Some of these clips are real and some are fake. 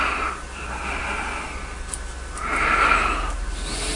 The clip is real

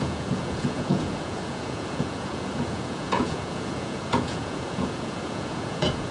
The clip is fake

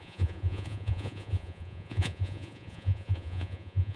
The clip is fake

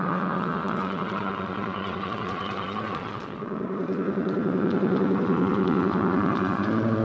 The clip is fake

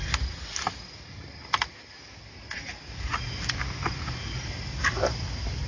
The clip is real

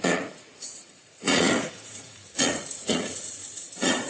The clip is fake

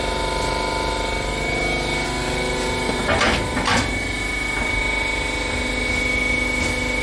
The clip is real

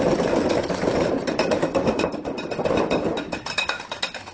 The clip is real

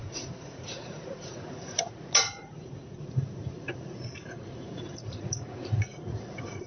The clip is fake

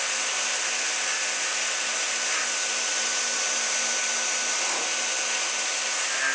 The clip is real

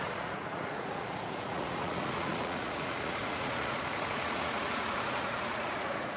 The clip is fake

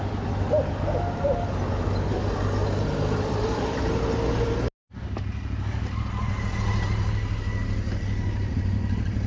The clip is real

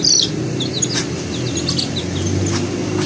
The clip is real